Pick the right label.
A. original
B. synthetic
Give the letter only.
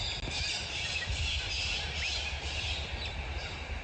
A